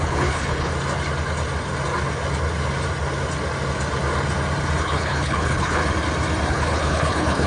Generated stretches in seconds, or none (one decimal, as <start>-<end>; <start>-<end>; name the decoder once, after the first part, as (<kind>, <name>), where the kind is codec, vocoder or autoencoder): 0.0-0.7 (codec, HILCodec); 4.8-5.8; 6.5-7.5